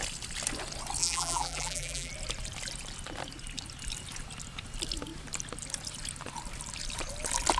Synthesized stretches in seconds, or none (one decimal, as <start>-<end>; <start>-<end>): 1.0-2.1